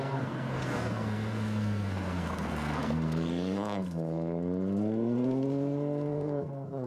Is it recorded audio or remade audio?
remade